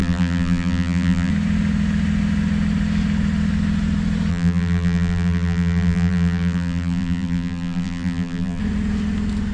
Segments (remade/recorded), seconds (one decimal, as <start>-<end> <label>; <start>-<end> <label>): 0.0-1.3 remade; 1.3-4.3 recorded; 4.3-8.6 remade; 8.6-9.5 recorded

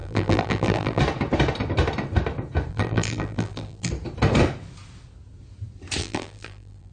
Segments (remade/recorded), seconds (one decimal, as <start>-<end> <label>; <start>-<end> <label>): 0.0-1.0 remade; 1.0-2.7 recorded; 2.7-3.9 remade; 3.9-6.0 recorded; 6.0-6.9 remade

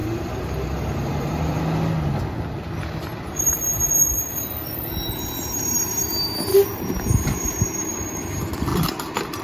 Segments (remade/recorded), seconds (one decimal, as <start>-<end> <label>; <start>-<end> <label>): 0.0-1.6 remade; 1.6-6.5 recorded; 6.5-8.2 remade; 8.2-9.4 recorded

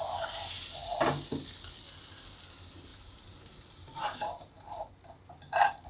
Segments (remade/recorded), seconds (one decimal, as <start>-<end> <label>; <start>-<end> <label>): 0.0-2.9 recorded; 2.9-4.9 remade; 4.9-5.9 recorded

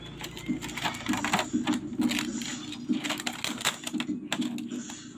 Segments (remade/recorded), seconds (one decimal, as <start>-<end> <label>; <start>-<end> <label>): 0.0-5.2 recorded

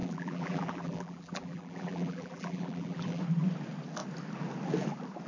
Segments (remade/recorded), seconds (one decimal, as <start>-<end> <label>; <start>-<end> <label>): 0.0-3.2 remade; 3.2-5.3 recorded

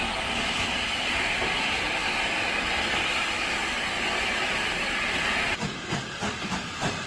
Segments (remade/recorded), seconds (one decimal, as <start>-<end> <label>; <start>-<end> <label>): 0.0-3.6 remade; 3.6-4.3 recorded; 4.3-7.1 remade

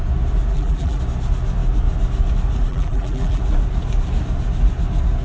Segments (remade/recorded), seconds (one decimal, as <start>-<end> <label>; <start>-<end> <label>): 0.0-0.5 recorded; 0.5-1.0 remade; 1.0-2.7 recorded; 2.7-3.4 remade; 3.4-5.2 recorded